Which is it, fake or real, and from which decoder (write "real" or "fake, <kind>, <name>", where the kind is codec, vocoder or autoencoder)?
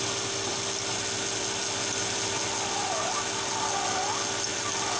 real